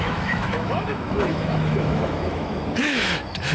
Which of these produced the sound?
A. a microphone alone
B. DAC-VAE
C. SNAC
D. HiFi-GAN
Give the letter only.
B